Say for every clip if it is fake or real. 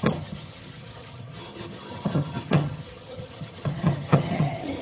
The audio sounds fake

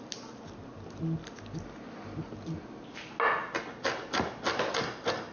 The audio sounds real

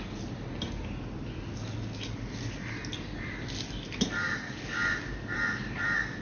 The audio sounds real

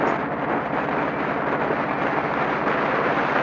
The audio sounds real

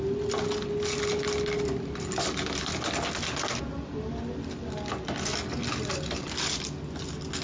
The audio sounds real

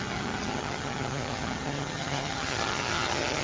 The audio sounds fake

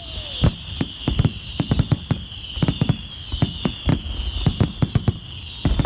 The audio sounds real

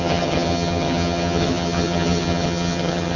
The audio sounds fake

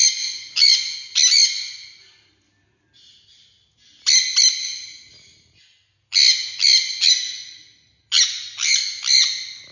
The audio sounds real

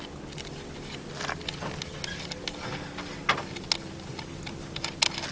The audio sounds real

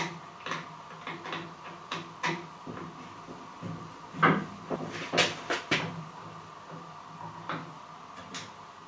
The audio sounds real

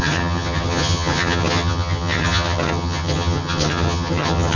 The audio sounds fake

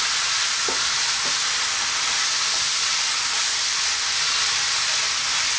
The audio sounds real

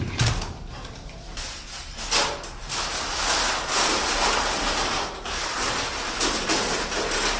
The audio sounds real